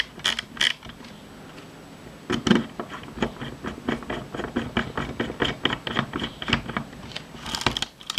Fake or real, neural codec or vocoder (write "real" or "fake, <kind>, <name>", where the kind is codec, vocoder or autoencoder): real